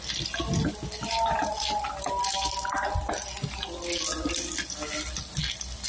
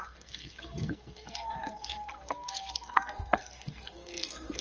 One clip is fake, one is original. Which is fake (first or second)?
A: second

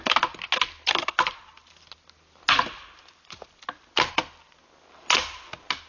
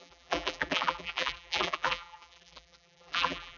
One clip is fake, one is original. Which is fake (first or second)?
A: second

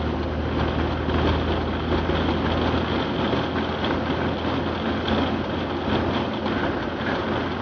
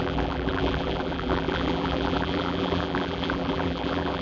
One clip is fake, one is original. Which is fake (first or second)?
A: second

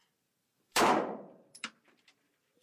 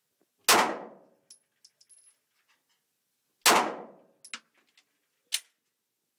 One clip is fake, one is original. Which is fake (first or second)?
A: first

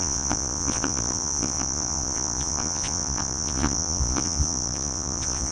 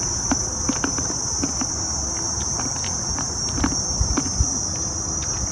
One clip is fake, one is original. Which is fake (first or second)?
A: first